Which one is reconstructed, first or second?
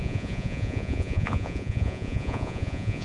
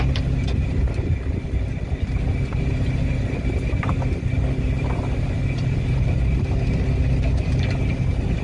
first